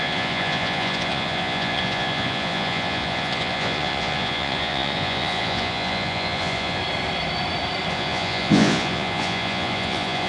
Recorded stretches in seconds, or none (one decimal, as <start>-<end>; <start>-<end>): 6.8-7.9